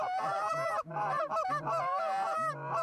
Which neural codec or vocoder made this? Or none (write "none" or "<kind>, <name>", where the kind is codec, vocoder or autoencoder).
vocoder, BigVGAN v2